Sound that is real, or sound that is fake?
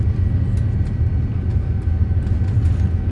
real